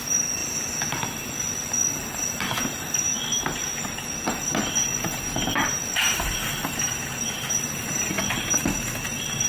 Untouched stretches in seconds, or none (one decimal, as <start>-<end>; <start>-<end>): 0.4-2.6; 3.1-3.6